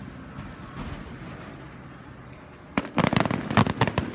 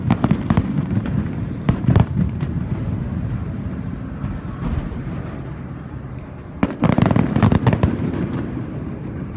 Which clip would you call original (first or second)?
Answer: first